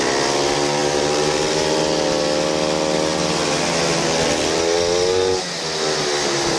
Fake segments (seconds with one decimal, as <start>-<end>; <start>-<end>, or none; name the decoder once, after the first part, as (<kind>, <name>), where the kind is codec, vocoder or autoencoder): none